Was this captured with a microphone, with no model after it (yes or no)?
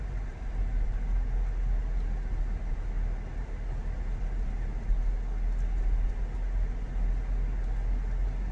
yes